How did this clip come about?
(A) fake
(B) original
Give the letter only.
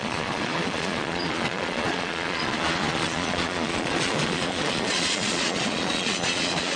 A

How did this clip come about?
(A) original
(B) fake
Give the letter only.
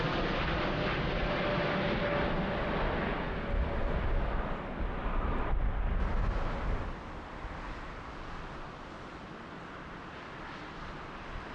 A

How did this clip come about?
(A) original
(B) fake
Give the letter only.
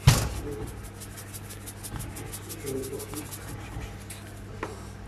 A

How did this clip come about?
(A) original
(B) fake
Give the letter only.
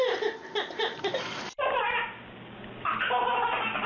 A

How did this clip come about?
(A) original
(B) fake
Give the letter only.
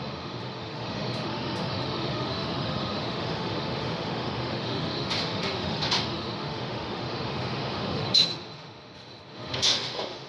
B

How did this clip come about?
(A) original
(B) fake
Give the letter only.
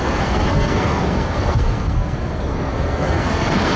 B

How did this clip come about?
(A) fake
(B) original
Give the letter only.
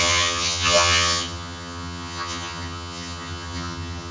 A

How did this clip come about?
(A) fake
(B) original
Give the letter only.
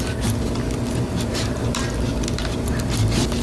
B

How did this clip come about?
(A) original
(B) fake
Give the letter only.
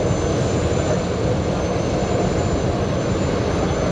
A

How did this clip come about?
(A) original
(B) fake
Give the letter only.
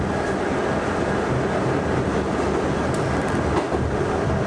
A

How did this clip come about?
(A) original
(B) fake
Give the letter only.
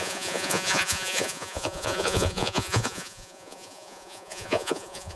B